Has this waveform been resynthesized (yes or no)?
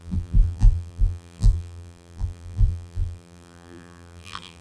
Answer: yes